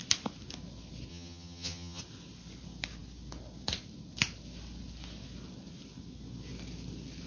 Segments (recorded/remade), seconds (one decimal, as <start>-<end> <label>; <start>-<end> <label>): 0.0-1.1 recorded; 1.1-2.0 remade; 2.0-7.3 recorded